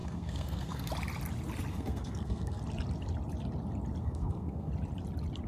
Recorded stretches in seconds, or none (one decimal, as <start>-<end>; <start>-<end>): 0.9-1.7; 2.6-4.0; 4.7-5.5

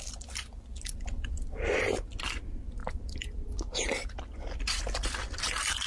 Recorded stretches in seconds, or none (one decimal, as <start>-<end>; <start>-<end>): 0.0-5.9

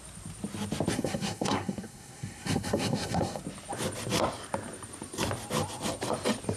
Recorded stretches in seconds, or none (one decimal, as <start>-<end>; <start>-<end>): 0.0-0.9; 3.4-6.6

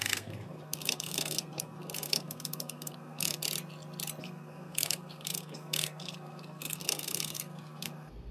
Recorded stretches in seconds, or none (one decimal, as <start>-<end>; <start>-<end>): 3.4-4.2